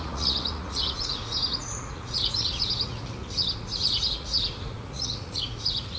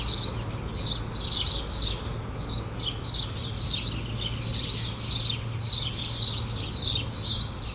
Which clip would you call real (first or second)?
second